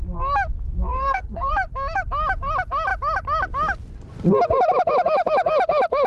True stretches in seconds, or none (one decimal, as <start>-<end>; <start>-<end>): 0.0-0.9; 1.5-6.1